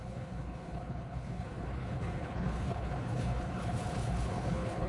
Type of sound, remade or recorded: remade